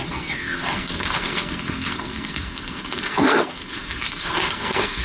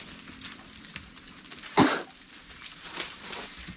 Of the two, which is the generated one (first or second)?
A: first